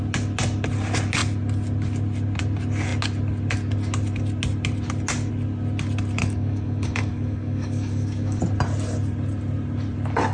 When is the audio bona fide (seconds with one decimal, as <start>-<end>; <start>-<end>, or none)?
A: 0.0-6.2; 8.4-10.3